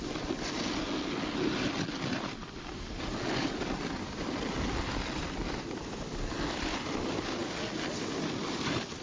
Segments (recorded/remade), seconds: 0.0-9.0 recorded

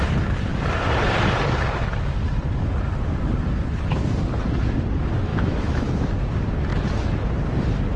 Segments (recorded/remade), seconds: 0.0-5.3 recorded; 5.3-5.9 remade; 5.9-8.0 recorded